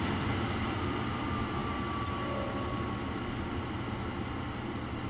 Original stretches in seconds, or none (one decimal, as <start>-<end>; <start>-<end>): 0.0-5.1